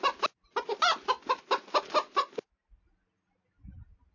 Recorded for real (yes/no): yes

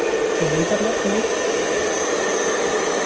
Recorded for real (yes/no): yes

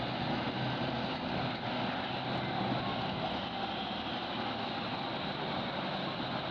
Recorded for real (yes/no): yes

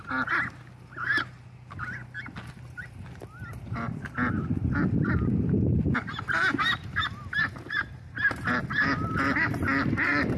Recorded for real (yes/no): yes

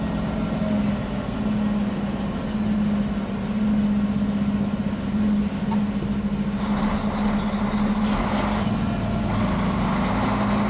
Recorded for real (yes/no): yes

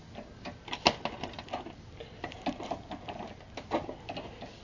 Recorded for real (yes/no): yes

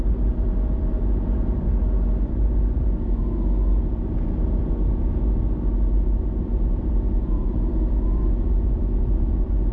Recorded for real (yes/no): no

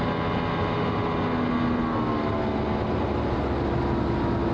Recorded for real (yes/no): yes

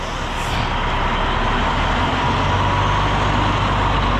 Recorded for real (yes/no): yes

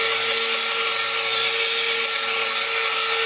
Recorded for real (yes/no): yes